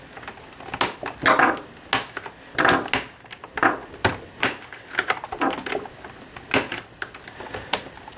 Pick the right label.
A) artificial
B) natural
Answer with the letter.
B